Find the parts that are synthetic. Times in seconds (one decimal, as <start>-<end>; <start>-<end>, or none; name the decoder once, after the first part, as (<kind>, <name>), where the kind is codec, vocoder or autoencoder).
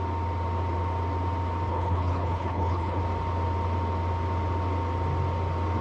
1.7-3.0 (codec, HILCodec)